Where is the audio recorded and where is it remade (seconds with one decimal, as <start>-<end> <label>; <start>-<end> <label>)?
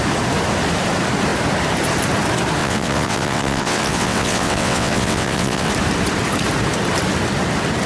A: 0.0-2.6 recorded; 2.6-5.7 remade; 5.7-7.9 recorded